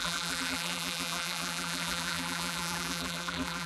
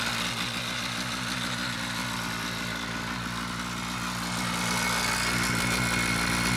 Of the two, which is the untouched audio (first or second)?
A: second